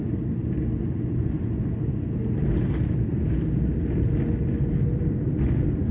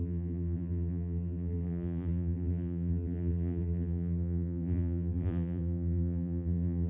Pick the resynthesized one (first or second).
second